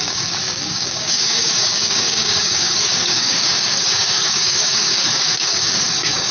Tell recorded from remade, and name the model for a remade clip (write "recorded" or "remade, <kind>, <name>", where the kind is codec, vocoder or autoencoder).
remade, codec, DAC